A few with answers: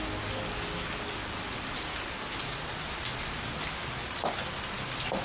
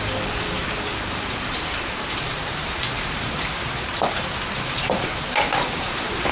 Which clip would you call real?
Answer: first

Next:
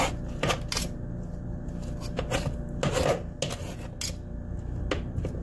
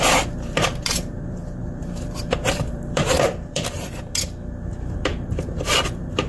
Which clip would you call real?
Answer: first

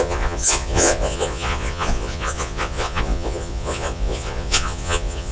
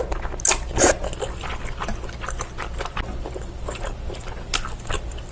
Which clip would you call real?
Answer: second